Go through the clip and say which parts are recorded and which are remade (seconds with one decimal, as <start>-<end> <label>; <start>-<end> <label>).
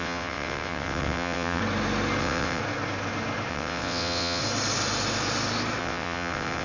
0.0-1.6 remade; 1.6-2.2 recorded; 2.2-2.6 remade; 2.6-3.5 recorded; 3.5-4.4 remade; 4.4-5.8 recorded; 5.8-6.6 remade